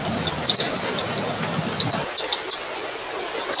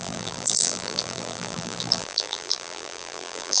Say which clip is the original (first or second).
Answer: first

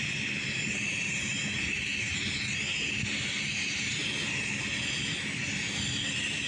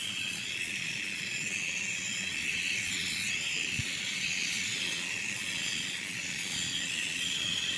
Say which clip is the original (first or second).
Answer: first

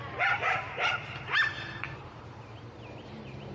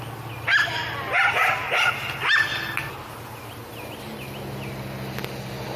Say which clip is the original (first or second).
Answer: second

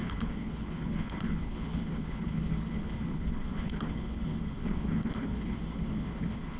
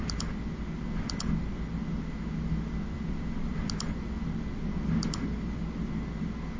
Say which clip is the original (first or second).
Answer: second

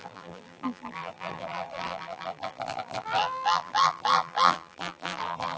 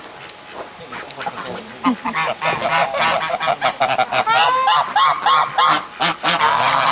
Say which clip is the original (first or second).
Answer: second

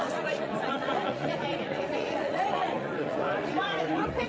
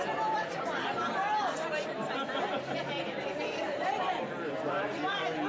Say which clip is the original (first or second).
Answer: second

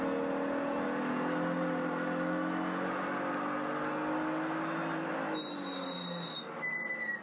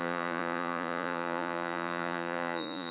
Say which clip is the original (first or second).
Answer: first